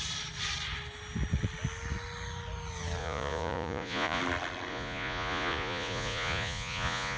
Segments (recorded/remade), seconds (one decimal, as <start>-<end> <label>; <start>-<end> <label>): 0.0-3.0 recorded; 3.0-4.2 remade; 4.2-4.7 recorded; 4.7-7.2 remade